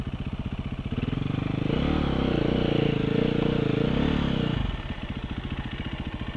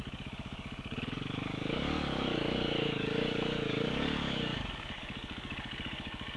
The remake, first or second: second